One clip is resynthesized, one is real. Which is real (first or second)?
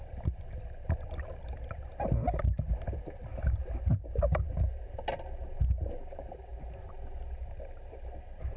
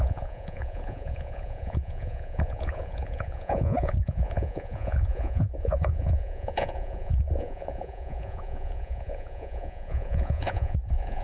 first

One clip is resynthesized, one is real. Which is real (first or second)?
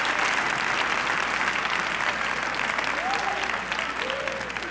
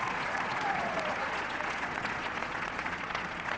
first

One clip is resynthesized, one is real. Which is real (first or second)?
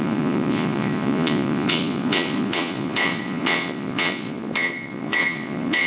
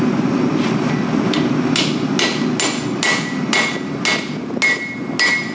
second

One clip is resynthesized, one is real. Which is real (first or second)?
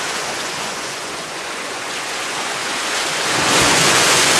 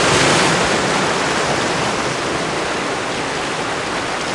second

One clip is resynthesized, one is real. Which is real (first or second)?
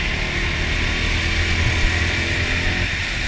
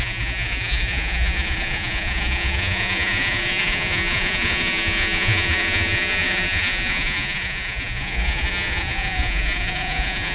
first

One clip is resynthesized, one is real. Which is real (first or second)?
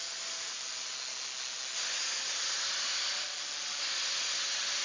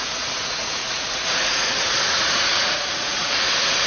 first